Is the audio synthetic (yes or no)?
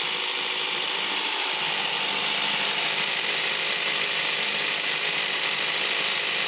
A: yes